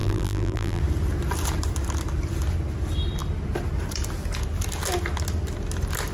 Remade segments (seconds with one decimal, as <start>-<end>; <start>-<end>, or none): 0.0-0.8